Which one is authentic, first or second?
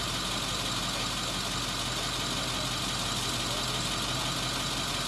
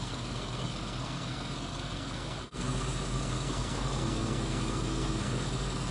first